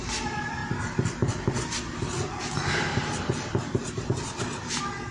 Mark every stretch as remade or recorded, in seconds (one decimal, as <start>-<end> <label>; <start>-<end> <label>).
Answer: 0.0-2.9 recorded; 2.9-4.4 remade; 4.4-5.1 recorded